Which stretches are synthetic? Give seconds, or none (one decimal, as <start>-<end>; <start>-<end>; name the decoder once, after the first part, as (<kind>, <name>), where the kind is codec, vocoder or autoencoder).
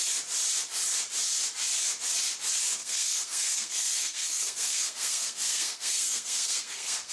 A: 2.8-7.1 (codec, SNAC)